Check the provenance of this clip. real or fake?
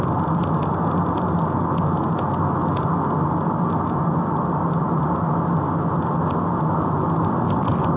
real